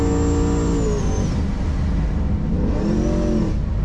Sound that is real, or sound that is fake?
real